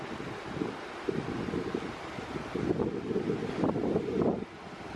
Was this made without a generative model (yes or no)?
yes